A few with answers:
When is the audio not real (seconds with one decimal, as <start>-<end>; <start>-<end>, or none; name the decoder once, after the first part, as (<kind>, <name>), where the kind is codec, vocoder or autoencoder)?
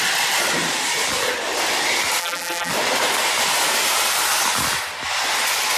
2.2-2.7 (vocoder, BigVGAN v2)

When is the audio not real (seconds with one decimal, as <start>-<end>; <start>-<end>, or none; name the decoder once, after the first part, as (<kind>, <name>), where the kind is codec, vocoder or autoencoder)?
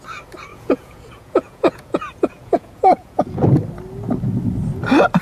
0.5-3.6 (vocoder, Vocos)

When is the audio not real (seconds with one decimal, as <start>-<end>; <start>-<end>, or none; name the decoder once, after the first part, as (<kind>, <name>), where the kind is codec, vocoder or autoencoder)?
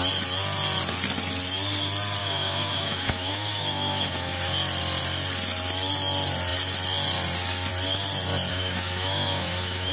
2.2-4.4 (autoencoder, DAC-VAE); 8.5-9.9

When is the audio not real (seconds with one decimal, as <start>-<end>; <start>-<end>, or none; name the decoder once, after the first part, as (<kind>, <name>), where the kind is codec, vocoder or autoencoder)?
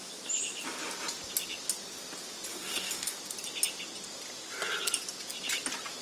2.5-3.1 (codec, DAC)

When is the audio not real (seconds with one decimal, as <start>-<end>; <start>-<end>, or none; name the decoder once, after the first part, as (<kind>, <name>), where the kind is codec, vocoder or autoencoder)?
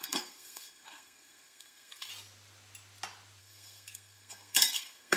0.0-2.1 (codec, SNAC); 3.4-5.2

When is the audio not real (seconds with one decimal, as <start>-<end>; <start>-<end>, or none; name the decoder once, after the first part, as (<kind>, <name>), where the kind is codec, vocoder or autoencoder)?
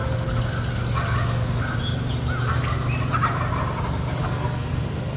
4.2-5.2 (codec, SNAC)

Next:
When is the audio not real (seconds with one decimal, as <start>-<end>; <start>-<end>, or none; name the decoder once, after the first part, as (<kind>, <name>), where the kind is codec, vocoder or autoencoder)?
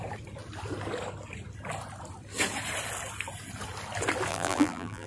4.3-5.1 (vocoder, BigVGAN v2)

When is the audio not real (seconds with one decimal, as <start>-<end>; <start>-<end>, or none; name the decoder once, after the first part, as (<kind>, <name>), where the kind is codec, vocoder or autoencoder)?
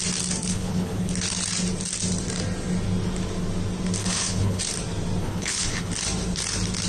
0.5-1.1 (codec, HILCodec); 4.0-4.6; 5.2-5.9